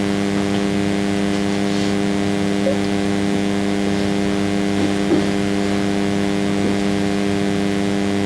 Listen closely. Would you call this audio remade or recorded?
recorded